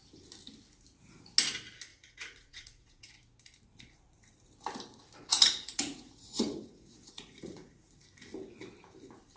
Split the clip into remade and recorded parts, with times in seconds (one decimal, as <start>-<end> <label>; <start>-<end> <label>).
0.0-1.9 recorded; 1.9-3.1 remade; 3.1-5.3 recorded; 5.3-7.9 remade; 7.9-9.4 recorded